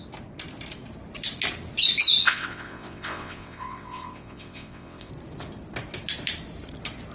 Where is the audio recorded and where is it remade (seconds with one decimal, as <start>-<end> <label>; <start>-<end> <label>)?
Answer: 0.0-2.2 recorded; 2.2-5.1 remade; 5.1-7.1 recorded